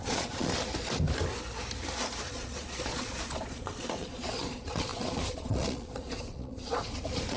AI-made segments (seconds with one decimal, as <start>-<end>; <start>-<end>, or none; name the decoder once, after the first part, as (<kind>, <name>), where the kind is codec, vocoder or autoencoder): 0.0-0.5 (vocoder, Vocos); 2.2-7.4